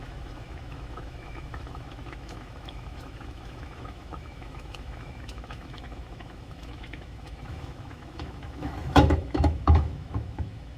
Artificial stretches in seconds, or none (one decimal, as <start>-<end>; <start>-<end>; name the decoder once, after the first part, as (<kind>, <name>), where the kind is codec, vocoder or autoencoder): 0.0-10.8 (autoencoder, DAC-VAE)